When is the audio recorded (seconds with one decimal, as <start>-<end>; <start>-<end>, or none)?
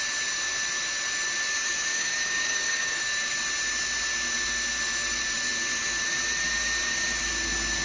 0.0-1.9; 3.3-7.8